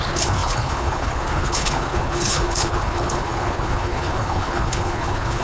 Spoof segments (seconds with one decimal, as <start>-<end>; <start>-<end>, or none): 0.0-5.4